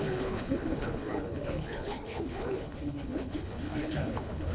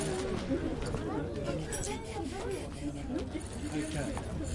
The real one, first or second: second